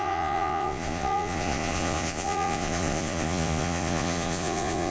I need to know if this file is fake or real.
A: fake